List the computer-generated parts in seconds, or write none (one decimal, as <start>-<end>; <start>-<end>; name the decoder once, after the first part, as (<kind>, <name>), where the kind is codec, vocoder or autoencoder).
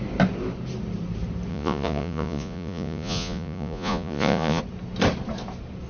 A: 1.5-4.6 (vocoder, Vocos)